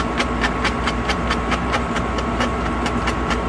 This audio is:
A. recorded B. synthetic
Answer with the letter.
B